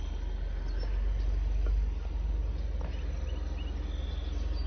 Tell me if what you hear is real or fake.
real